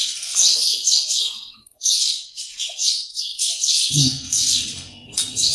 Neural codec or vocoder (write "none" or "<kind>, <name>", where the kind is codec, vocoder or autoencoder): codec, SNAC